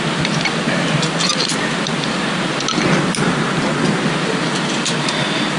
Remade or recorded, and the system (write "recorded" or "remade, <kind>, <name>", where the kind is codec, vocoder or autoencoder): recorded